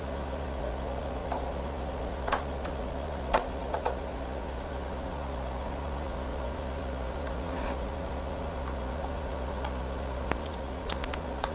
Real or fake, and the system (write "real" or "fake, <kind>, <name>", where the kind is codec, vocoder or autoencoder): fake, vocoder, Vocos